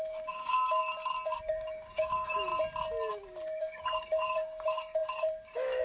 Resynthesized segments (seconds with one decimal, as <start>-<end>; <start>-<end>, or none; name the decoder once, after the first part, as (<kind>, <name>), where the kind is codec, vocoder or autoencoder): 0.0-0.8 (codec, DAC); 1.5-2.5; 3.1-5.8